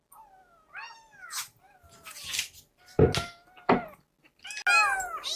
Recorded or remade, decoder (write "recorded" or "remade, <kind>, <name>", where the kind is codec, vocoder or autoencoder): recorded